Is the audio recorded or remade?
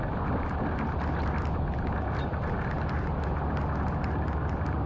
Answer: recorded